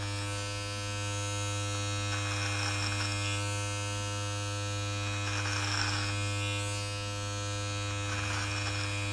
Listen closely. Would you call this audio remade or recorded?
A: recorded